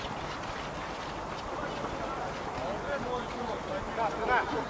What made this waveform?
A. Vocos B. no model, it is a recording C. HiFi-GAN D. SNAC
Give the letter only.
B